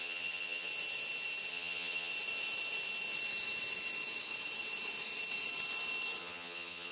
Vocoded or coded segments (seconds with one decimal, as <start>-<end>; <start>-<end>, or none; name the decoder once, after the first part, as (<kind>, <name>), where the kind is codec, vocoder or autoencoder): 0.0-0.7 (vocoder, HiFi-GAN); 1.5-2.1; 6.2-6.9